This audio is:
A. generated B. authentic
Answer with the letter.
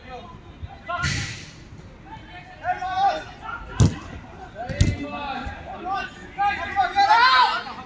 B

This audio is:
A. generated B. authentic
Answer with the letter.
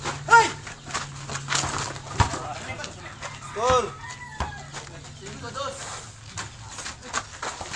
B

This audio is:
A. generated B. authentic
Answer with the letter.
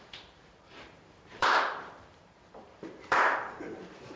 A